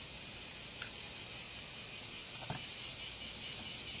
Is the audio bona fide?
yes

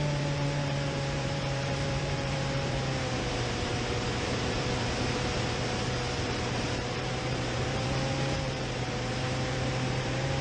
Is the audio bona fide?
no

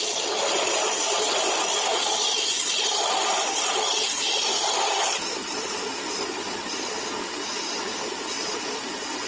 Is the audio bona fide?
yes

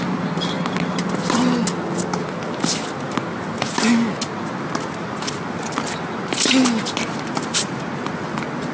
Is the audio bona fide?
yes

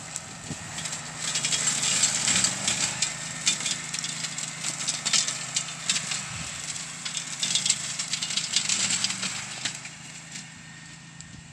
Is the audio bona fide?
yes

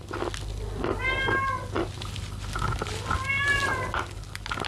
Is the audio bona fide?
yes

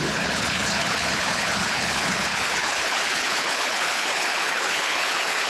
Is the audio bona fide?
no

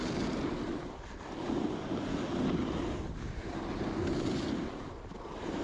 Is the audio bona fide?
yes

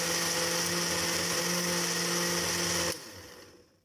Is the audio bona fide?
yes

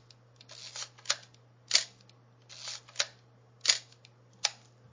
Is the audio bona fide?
yes